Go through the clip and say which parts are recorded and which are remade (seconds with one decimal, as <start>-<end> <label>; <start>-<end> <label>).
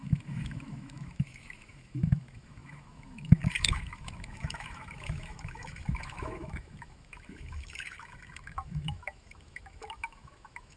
0.0-10.8 remade